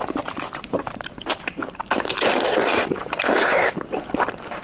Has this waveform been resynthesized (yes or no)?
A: yes